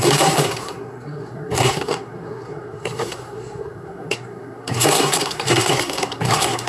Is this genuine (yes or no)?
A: no